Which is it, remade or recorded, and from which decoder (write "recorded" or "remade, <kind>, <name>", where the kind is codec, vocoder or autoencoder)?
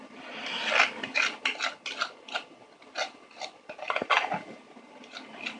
recorded